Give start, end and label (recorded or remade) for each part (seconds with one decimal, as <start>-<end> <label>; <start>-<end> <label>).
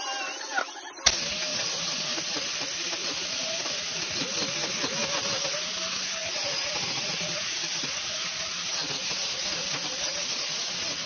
0.0-1.5 recorded; 1.5-2.2 remade; 2.2-3.0 recorded; 3.0-4.2 remade; 4.2-6.2 recorded; 6.2-11.1 remade